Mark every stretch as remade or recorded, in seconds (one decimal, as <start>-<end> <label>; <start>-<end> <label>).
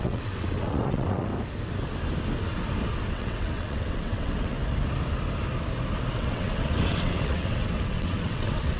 0.0-1.3 remade; 1.3-3.1 recorded; 3.1-4.6 remade; 4.6-6.1 recorded; 6.1-8.8 remade